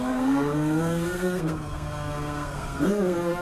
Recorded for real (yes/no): no